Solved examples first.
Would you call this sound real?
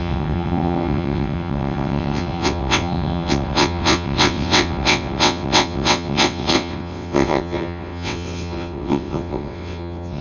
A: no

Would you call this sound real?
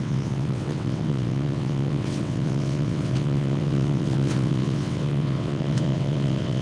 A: no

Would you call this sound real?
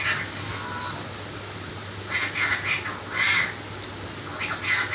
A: yes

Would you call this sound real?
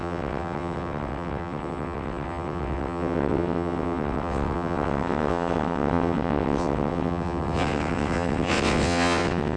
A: no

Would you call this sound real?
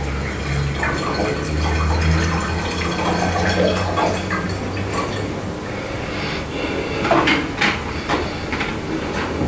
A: yes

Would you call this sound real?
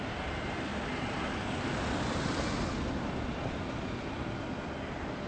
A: yes